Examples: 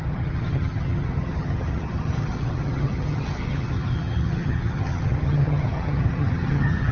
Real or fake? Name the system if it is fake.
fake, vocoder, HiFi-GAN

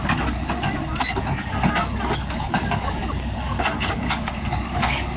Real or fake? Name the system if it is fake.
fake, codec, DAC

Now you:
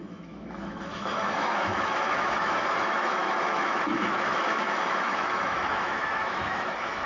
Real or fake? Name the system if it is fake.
fake, autoencoder, DAC-VAE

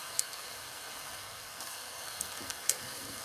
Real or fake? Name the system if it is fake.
fake, codec, SNAC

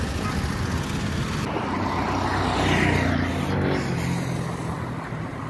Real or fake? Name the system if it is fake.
real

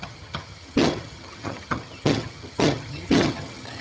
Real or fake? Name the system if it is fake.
fake, vocoder, HiFi-GAN